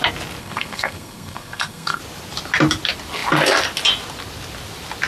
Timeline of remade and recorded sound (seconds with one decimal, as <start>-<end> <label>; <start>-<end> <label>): 0.0-0.4 recorded; 0.4-2.0 remade; 2.0-5.1 recorded